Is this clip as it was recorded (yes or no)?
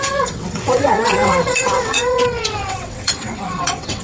no